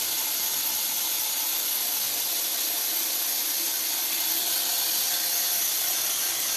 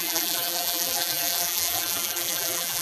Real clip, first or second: first